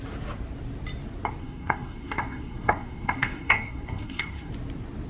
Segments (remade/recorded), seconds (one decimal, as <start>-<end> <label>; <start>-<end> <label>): 0.0-1.4 recorded; 1.4-4.5 remade; 4.5-5.1 recorded